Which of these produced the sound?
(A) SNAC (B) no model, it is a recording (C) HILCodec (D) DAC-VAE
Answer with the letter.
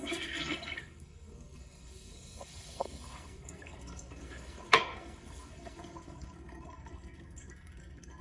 A